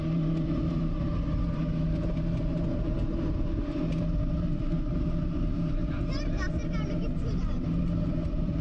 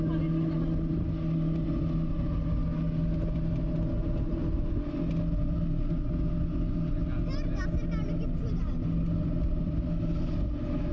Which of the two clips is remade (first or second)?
first